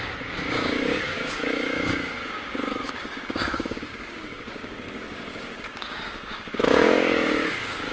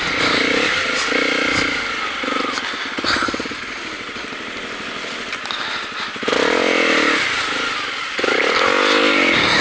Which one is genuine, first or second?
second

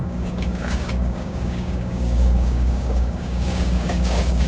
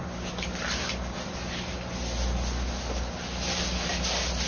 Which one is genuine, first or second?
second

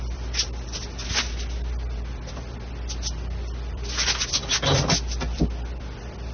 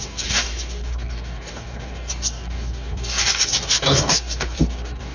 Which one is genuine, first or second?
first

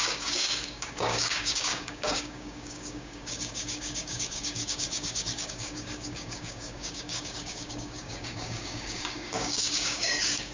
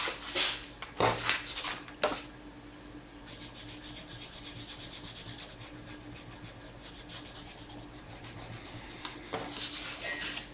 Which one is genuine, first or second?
second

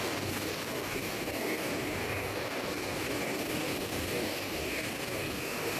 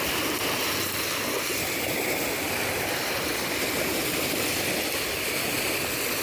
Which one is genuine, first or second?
second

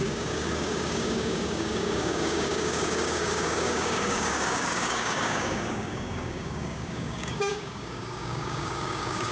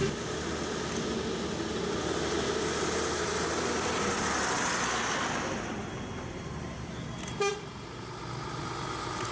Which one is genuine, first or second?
second